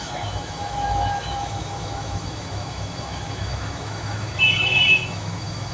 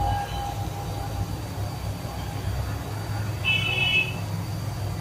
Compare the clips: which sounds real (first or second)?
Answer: second